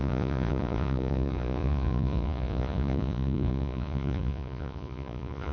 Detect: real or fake fake